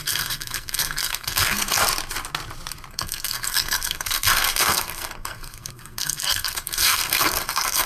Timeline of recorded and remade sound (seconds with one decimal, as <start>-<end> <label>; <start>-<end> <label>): 0.0-1.8 remade; 1.8-2.9 recorded; 2.9-7.9 remade

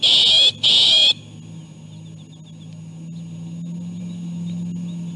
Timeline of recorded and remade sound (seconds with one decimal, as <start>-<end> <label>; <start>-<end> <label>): 0.0-5.2 recorded

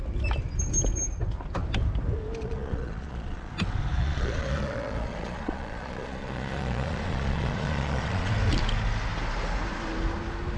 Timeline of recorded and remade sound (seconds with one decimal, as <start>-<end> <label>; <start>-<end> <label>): 0.0-2.4 recorded; 2.4-3.5 remade; 3.5-4.0 recorded; 4.0-8.3 remade; 8.3-10.6 recorded

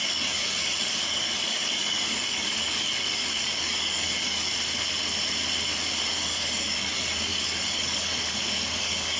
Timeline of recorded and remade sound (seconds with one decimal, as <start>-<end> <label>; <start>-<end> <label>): 0.0-4.5 remade; 4.5-6.0 recorded; 6.0-9.2 remade

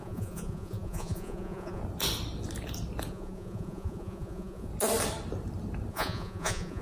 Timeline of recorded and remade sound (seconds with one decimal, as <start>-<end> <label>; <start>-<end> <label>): 0.0-1.8 remade; 1.8-3.1 recorded; 3.1-4.7 remade; 4.7-5.9 recorded; 5.9-6.8 remade

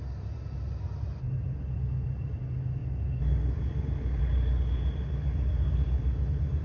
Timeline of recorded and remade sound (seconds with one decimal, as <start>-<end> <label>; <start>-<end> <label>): 0.0-6.6 recorded

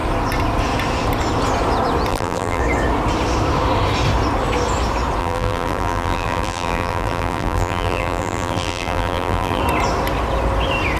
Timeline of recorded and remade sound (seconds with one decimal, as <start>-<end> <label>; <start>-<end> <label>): 0.0-2.1 recorded; 2.1-2.6 remade; 2.6-5.2 recorded; 5.2-9.6 remade; 9.6-11.0 recorded

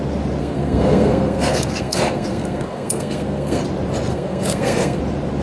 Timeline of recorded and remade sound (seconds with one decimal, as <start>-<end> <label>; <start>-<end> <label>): 0.0-0.4 recorded; 0.4-3.6 remade; 3.6-4.1 recorded; 4.1-5.0 remade; 5.0-5.4 recorded